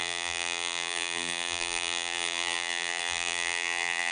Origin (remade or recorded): remade